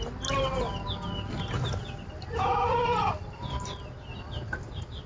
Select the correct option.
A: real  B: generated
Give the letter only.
A